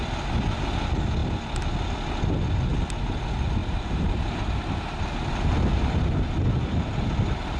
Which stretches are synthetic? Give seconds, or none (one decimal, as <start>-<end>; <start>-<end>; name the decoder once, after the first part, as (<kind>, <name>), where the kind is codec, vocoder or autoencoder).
3.6-5.0 (vocoder, BigVGAN v2)